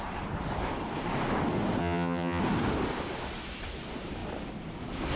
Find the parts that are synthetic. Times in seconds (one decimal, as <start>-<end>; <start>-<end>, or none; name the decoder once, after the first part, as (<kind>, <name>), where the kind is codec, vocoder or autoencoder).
1.8-2.4 (vocoder, HiFi-GAN)